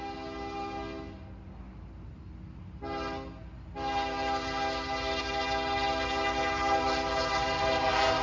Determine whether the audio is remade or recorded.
recorded